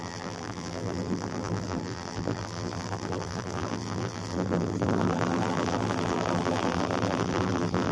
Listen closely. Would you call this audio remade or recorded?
remade